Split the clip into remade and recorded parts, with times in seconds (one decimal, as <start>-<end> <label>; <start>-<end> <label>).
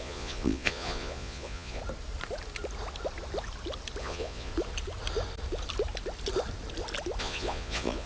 0.0-1.8 remade; 1.8-4.0 recorded; 4.0-4.5 remade; 4.5-7.2 recorded; 7.2-8.1 remade